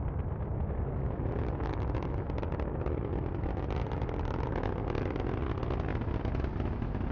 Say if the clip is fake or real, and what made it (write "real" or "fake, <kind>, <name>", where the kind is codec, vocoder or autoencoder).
real